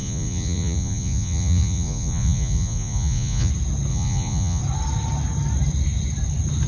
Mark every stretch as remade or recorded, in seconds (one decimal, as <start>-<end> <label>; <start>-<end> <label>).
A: 0.0-3.5 remade; 3.5-3.9 recorded; 3.9-4.6 remade; 4.6-6.7 recorded